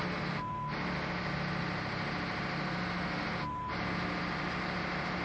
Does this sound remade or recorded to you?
recorded